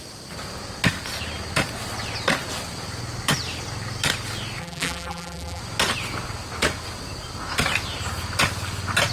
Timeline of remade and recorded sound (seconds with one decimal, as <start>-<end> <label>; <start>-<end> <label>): 0.0-4.6 recorded; 4.6-5.6 remade; 5.6-9.1 recorded